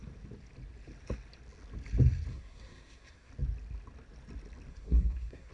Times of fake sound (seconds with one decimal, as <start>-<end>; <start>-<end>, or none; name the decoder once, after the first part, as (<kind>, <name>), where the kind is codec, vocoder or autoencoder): 2.3-3.3 (codec, SNAC); 4.7-5.5